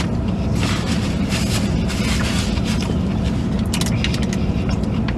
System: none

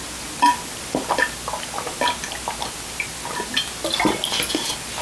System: none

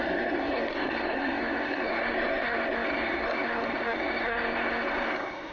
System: codec, SNAC